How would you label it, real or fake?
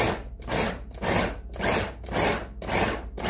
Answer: real